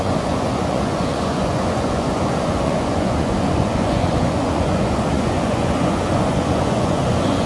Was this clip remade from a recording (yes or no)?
yes